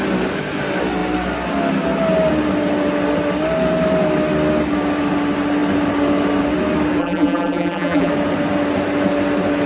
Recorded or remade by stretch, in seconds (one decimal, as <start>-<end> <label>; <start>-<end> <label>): 0.0-7.0 recorded; 7.0-8.1 remade; 8.1-9.7 recorded

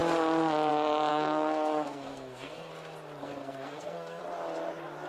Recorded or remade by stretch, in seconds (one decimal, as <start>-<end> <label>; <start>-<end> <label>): 0.0-1.1 recorded; 1.1-2.7 remade; 2.7-3.2 recorded; 3.2-4.2 remade; 4.2-5.1 recorded

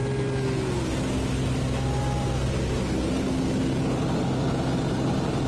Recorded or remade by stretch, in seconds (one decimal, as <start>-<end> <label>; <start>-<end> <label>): 0.0-5.5 recorded

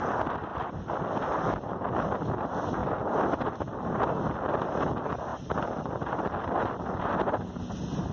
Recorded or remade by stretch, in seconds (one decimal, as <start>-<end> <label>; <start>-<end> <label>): 0.0-2.8 recorded; 2.8-3.4 remade; 3.4-8.1 recorded

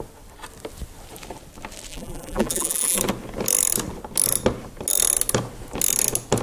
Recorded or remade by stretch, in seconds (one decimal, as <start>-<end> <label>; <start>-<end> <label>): 0.0-1.9 recorded; 1.9-3.0 remade; 3.0-6.4 recorded

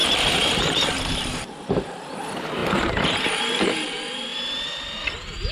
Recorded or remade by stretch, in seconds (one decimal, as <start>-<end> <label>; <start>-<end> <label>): 0.0-4.3 remade; 4.3-5.5 recorded